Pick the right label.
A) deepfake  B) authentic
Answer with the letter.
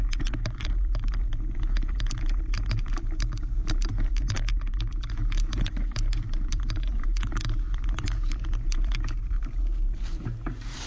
A